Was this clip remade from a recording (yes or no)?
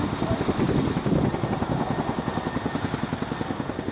no